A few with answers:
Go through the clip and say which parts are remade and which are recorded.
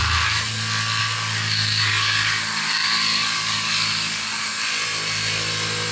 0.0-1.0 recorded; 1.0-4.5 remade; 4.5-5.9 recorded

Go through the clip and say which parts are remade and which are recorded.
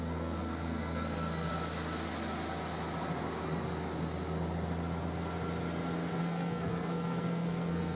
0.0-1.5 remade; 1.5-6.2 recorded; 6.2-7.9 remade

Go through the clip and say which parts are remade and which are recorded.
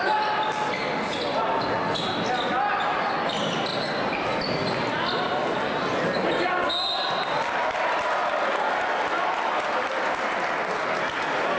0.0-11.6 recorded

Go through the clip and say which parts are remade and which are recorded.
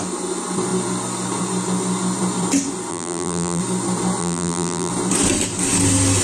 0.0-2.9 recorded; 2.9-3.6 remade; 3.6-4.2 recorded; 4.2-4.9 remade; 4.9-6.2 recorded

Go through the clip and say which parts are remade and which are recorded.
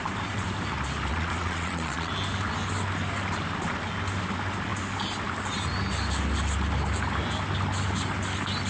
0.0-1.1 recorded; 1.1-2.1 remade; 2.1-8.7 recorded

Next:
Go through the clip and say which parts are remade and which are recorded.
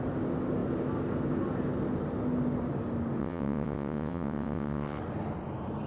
0.0-3.2 recorded; 3.2-5.0 remade; 5.0-5.9 recorded